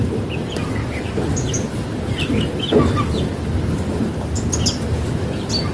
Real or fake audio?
real